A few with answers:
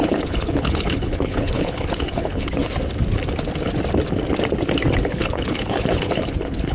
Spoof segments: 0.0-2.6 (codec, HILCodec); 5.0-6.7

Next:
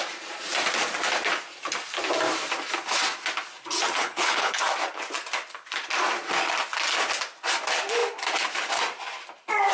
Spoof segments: 4.0-4.6 (codec, HILCodec)

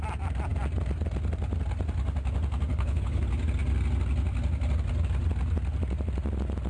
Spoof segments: 2.7-3.2 (codec, HILCodec)

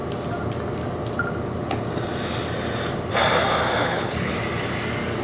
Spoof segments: 3.8-4.3 (codec, HILCodec)

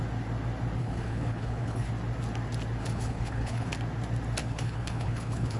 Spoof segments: 0.8-1.9 (codec, HILCodec); 2.8-3.7; 4.4-5.6

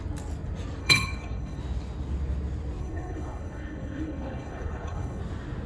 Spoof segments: 0.8-1.6 (codec, HILCodec); 2.8-5.2

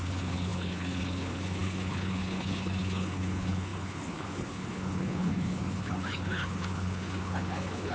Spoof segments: 0.0-7.9 (codec, HILCodec)

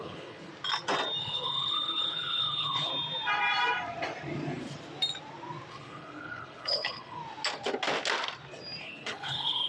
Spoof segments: 0.0-0.5 (codec, HILCodec); 1.2-2.9; 5.7-7.2; 8.8-9.7